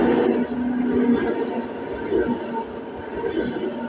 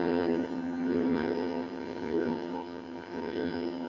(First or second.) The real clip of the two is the first